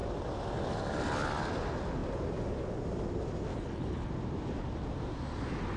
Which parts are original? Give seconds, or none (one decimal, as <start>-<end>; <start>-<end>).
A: 0.0-3.5; 4.1-5.8

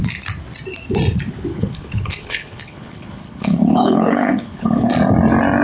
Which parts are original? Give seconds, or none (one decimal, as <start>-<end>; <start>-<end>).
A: 0.0-1.5; 4.9-5.6

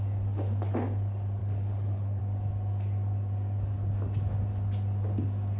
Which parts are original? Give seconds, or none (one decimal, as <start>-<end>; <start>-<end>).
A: 0.0-1.4; 2.2-5.6

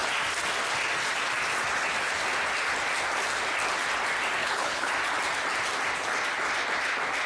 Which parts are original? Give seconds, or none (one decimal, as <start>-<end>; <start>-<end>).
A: 0.0-4.4; 4.9-7.3

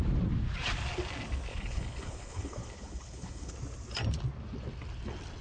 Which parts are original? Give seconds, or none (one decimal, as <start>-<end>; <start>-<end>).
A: 0.0-1.5; 3.5-5.4

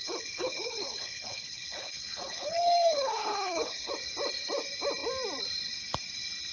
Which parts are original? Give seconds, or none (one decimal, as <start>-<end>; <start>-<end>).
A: 3.9-6.5

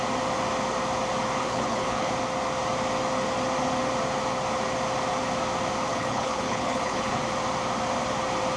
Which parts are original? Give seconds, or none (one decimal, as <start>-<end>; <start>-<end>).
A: 0.0-1.4; 2.1-5.9; 7.2-8.6